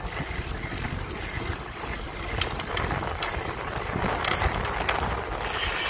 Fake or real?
real